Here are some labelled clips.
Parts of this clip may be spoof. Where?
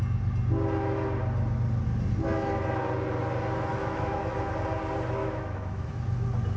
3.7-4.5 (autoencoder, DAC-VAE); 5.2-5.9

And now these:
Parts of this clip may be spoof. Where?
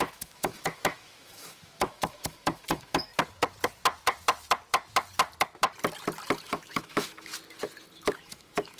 0.0-3.1 (autoencoder, DAC-VAE); 6.4-7.3; 7.9-8.8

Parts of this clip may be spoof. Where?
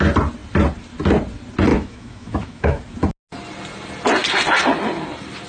1.7-2.8 (autoencoder, DAC-VAE)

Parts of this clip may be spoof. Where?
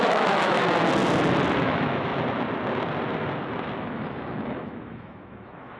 0.0-0.6 (autoencoder, DAC-VAE); 1.6-2.1; 3.8-5.8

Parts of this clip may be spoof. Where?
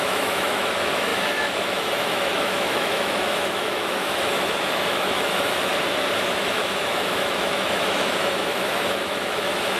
0.0-5.7 (autoencoder, DAC-VAE); 6.3-9.8